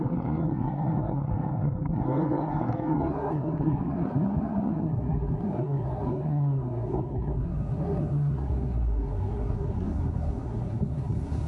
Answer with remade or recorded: remade